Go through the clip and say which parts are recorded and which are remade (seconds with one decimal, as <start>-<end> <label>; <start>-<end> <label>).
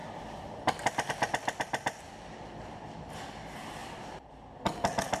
0.0-1.1 remade; 1.1-3.8 recorded; 3.8-4.3 remade; 4.3-5.2 recorded